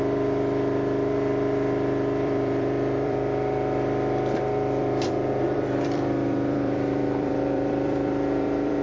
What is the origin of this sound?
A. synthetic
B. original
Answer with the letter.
A